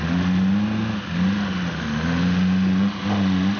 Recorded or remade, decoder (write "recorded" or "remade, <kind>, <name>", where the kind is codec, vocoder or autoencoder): recorded